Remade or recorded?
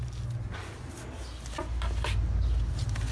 recorded